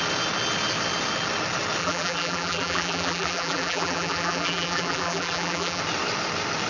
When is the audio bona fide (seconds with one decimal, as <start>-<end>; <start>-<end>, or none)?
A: 0.0-1.8; 5.8-6.7